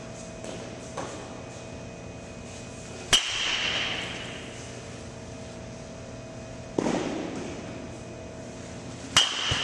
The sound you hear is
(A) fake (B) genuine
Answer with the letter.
B